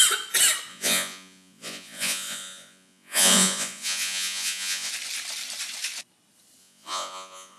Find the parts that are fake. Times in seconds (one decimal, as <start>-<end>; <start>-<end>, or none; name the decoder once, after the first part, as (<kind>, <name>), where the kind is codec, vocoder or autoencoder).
0.7-4.9 (vocoder, Vocos); 6.6-7.6